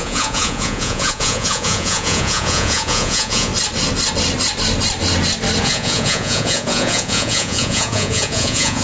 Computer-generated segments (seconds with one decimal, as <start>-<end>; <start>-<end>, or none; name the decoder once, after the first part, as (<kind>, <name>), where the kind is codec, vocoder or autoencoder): 0.0-3.5 (vocoder, Vocos); 5.6-8.8